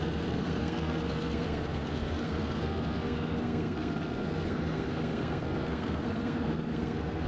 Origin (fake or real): fake